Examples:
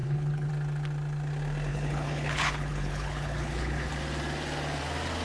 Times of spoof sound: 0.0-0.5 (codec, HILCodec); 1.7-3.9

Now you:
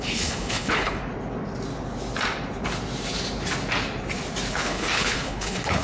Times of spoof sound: 0.0-1.0 (codec, HILCodec); 4.5-5.8

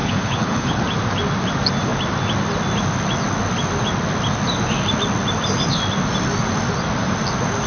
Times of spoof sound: 0.0-0.8 (codec, HILCodec)

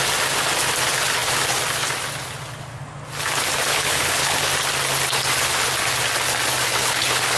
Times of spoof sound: 3.7-4.5 (codec, HILCodec); 6.8-7.4

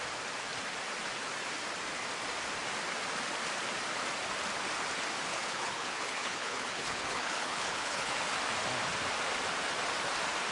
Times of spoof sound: 5.3-8.2 (codec, HILCodec)

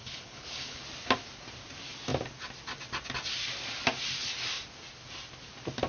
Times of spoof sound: 0.0-0.8 (codec, HILCodec)

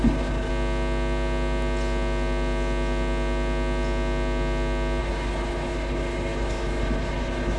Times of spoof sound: 0.0-0.5 (codec, HILCodec); 5.0-7.6

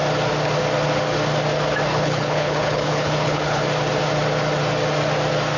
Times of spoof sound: 1.9-3.6 (codec, HILCodec)